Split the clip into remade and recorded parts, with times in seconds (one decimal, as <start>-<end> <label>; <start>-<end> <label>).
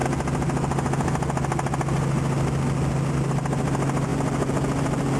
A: 0.0-5.2 recorded